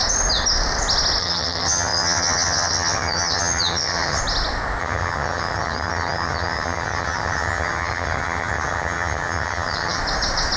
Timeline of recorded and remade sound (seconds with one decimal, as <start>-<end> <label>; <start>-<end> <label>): 0.0-1.2 recorded; 1.2-4.2 remade; 4.2-4.8 recorded; 4.8-10.0 remade; 10.0-10.6 recorded